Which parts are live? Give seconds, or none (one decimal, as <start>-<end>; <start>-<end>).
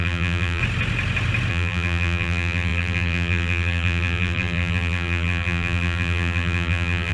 0.6-1.5